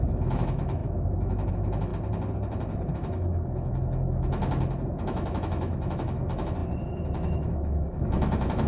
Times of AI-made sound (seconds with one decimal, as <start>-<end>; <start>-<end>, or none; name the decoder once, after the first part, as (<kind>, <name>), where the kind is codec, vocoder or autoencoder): 0.0-1.9 (autoencoder, DAC-VAE); 2.9-4.4; 5.0-8.7